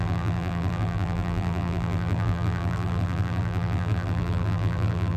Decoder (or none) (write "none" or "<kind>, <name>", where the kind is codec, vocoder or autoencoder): vocoder, BigVGAN v2